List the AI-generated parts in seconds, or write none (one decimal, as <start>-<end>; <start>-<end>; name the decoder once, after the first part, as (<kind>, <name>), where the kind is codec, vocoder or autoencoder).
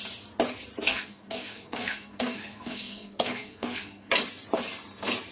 0.9-4.1 (codec, SNAC)